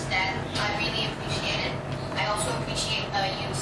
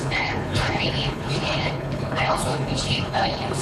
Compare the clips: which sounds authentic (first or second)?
first